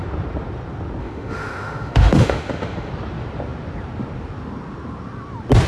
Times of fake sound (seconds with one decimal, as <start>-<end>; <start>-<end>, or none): 1.0-2.9